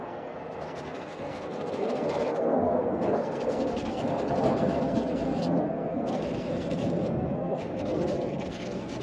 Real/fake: fake